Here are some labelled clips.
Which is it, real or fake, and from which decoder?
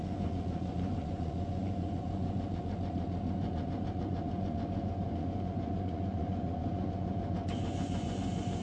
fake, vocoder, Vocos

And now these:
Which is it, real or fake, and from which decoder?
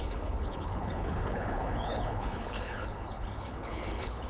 fake, codec, HILCodec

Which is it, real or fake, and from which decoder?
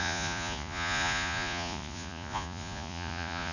fake, vocoder, Vocos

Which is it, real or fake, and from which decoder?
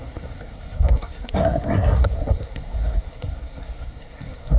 fake, codec, SNAC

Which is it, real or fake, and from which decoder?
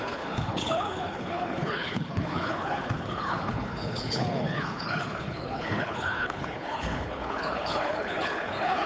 fake, codec, HILCodec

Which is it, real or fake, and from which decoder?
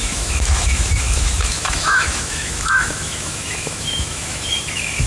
fake, autoencoder, DAC-VAE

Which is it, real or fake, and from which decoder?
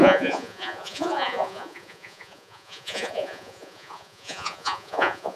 fake, vocoder, Vocos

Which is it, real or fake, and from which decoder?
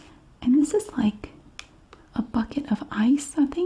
real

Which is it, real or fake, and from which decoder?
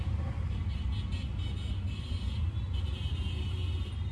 real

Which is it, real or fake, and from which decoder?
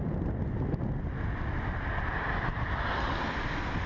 real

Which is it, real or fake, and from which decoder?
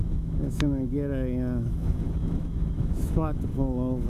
fake, autoencoder, DAC-VAE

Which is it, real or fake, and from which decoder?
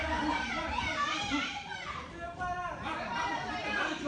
fake, vocoder, BigVGAN v2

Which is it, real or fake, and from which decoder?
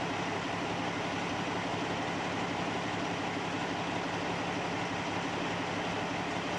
real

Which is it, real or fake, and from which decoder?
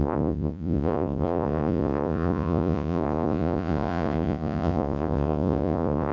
fake, vocoder, Vocos